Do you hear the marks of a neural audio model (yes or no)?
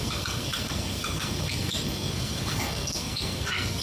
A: yes